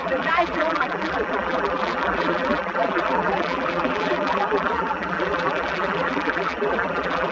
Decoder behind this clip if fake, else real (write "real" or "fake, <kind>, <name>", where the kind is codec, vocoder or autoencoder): fake, vocoder, BigVGAN v2